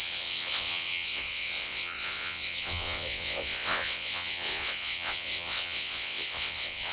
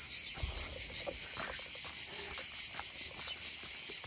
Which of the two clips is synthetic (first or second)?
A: first